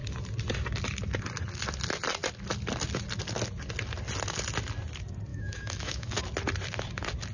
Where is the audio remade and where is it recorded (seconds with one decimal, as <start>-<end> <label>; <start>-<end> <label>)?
0.0-5.3 recorded; 5.3-6.2 remade; 6.2-7.3 recorded